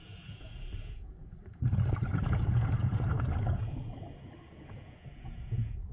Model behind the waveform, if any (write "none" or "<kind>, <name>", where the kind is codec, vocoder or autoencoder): vocoder, Vocos